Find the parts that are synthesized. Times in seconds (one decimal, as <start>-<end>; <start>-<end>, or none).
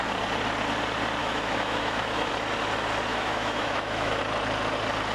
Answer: 1.2-2.3; 3.1-4.2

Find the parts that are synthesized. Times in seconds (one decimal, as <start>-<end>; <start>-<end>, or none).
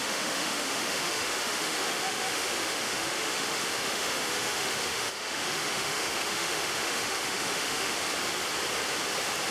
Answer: 0.0-8.0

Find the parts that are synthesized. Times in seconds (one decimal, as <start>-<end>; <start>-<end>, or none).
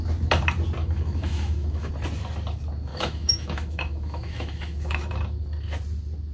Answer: 0.8-1.9; 2.9-5.1